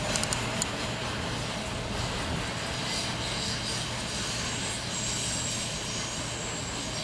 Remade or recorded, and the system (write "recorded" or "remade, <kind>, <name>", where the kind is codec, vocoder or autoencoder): recorded